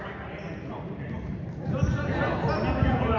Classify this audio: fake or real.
real